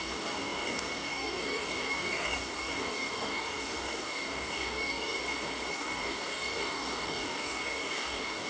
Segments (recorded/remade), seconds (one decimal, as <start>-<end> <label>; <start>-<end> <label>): 0.0-5.2 remade; 5.2-5.7 recorded; 5.7-8.5 remade